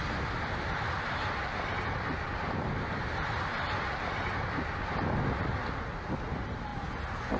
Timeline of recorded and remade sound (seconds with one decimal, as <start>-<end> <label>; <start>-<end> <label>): 0.0-7.4 recorded